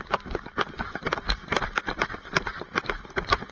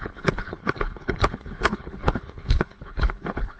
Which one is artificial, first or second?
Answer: second